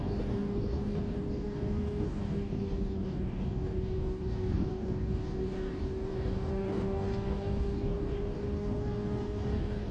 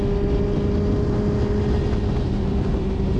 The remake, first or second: first